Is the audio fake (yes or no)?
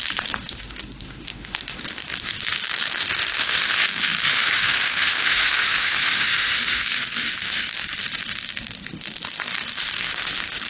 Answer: yes